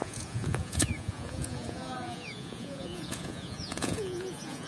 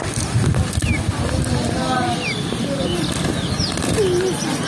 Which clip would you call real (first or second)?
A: second